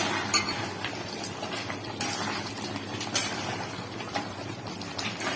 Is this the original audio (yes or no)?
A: no